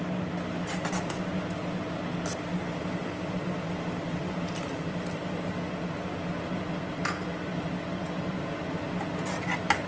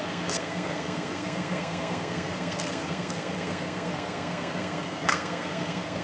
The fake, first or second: second